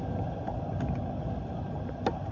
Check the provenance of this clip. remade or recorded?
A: recorded